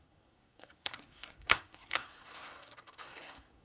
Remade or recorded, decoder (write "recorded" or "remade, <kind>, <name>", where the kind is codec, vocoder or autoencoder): remade, codec, SNAC